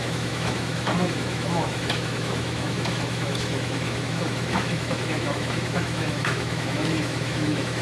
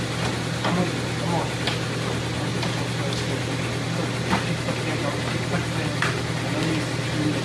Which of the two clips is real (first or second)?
second